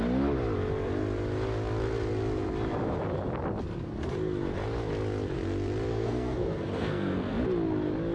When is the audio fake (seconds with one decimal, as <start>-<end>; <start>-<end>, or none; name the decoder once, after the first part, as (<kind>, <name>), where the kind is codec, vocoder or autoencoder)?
5.9-7.4 (codec, SNAC)